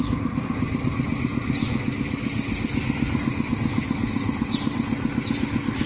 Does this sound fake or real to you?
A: real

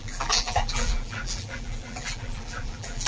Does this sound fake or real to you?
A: fake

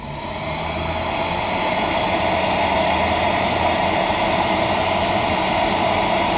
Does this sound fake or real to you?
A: real